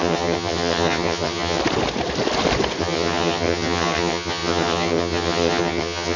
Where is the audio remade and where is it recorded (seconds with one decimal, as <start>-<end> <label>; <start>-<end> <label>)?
0.0-1.6 remade; 1.6-2.8 recorded; 2.8-6.2 remade